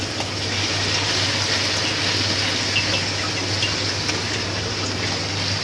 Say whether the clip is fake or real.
real